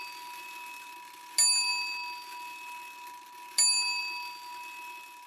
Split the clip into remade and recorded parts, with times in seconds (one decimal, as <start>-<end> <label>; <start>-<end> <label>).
0.0-5.3 recorded